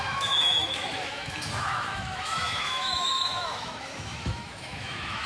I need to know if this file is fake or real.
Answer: fake